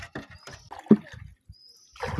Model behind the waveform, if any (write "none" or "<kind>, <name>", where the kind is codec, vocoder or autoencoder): none